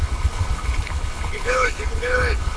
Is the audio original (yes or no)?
no